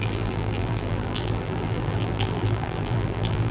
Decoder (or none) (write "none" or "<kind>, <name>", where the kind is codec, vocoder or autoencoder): vocoder, BigVGAN v2